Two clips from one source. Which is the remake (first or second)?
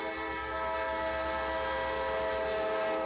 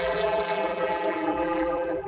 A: second